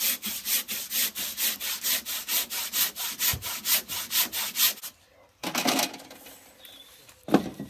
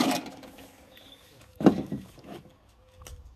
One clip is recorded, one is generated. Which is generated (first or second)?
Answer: second